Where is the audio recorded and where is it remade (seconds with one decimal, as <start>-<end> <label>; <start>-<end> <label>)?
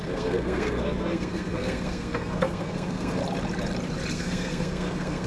0.0-3.2 remade; 3.2-4.1 recorded; 4.1-5.3 remade